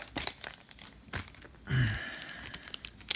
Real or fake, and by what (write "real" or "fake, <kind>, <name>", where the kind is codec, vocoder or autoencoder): real